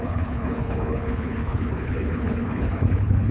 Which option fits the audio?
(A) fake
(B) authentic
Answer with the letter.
A